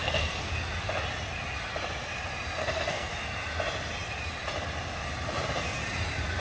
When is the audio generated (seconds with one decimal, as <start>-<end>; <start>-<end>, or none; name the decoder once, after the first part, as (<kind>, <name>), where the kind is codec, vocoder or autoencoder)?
0.0-0.5 (codec, SNAC); 2.6-3.1